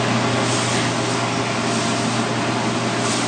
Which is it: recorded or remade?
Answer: recorded